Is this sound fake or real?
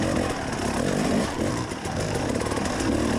real